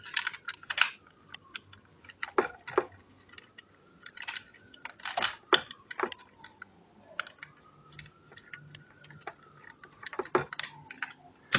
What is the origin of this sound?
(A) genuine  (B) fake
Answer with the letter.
A